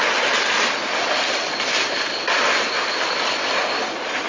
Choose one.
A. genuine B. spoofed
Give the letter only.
A